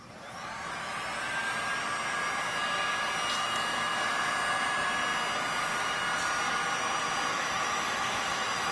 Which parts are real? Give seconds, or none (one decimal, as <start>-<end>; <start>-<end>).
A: 0.0-7.3